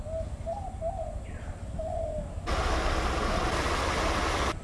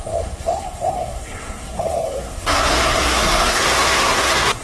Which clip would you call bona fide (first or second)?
first